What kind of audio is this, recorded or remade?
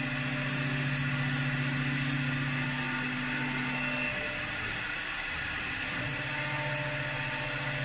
recorded